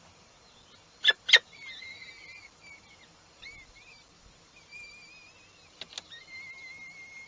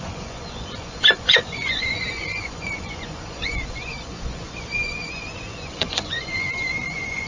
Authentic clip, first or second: first